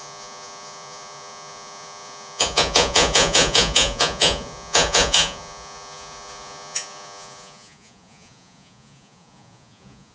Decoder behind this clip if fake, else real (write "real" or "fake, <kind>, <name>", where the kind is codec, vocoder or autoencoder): fake, vocoder, Vocos